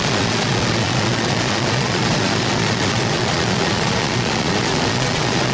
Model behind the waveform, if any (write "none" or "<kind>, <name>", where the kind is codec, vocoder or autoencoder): vocoder, Vocos